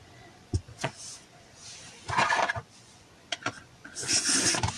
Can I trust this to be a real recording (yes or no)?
no